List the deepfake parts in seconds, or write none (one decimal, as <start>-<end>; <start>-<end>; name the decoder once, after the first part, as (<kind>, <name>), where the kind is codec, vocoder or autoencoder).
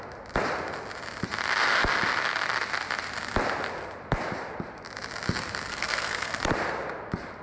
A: 5.7-6.4 (codec, SNAC)